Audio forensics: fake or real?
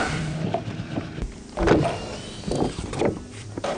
fake